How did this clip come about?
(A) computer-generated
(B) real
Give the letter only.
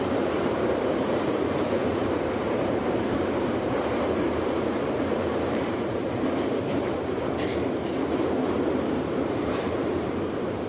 A